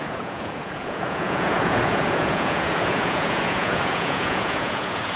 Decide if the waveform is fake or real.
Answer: fake